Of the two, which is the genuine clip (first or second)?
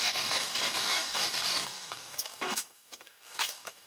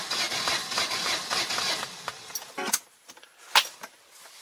second